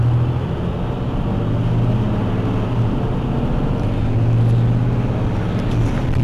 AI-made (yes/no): no